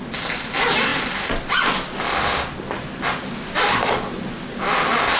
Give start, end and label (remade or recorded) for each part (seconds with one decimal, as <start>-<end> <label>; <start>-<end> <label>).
0.0-5.2 recorded